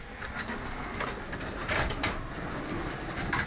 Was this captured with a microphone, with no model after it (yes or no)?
yes